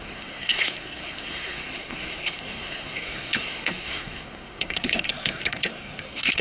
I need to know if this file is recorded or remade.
remade